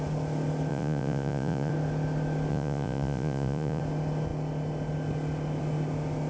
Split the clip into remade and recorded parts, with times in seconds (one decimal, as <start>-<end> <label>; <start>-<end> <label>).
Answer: 0.0-0.7 recorded; 0.7-1.7 remade; 1.7-2.5 recorded; 2.5-3.8 remade; 3.8-6.3 recorded